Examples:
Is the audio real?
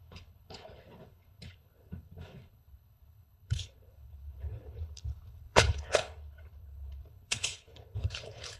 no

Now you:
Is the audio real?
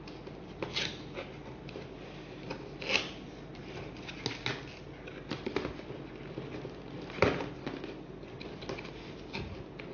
yes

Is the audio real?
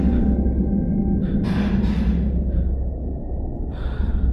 yes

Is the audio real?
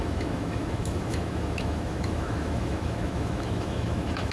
no